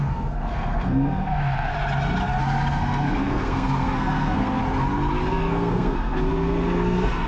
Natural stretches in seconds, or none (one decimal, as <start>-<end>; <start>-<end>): 1.7-2.4; 4.6-5.3